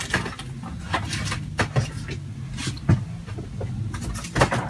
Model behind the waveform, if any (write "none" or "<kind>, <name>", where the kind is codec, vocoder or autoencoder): none